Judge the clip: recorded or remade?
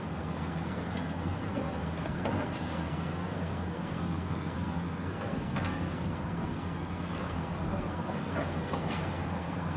remade